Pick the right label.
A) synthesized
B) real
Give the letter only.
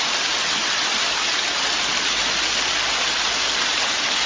B